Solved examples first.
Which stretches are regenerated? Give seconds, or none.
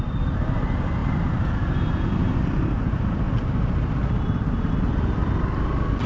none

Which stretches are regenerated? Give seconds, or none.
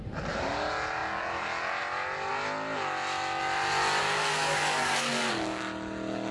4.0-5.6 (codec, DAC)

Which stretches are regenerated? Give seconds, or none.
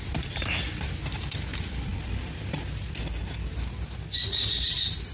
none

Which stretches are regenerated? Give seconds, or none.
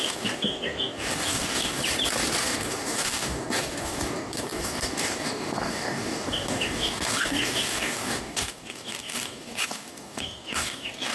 0.0-1.8 (codec, DAC); 2.4-11.1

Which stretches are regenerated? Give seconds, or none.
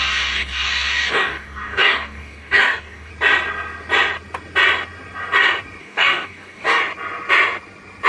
0.0-3.1 (codec, DAC); 5.8-6.8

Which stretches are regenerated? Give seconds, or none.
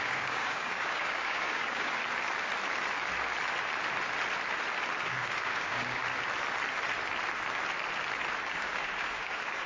0.0-2.0 (codec, DAC); 5.0-6.0; 8.5-9.7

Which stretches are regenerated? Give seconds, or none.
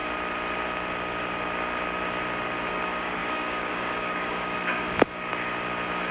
2.7-5.3 (codec, DAC)